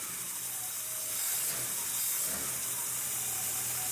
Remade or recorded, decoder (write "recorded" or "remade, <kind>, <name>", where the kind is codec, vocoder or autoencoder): recorded